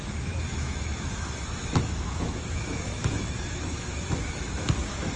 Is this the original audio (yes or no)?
no